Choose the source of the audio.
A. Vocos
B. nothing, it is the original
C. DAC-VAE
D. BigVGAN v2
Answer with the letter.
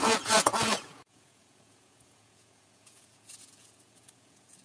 A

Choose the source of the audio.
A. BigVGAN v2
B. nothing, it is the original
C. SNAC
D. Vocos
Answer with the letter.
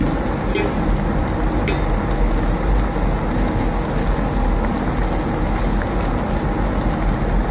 B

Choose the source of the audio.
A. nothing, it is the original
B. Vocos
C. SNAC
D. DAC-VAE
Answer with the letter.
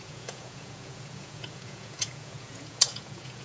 B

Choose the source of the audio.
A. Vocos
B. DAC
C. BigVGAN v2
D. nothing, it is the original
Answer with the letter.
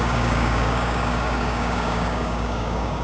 B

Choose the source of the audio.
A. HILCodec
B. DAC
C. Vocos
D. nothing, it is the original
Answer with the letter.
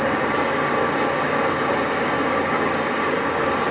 B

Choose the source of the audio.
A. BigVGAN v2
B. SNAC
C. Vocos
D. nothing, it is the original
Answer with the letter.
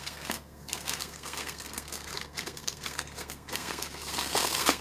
B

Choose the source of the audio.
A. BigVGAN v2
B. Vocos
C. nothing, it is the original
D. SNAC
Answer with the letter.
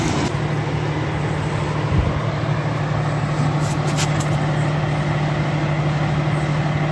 C